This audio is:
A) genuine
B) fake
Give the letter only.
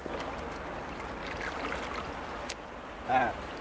A